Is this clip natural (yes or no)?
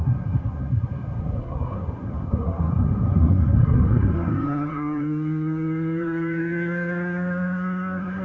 no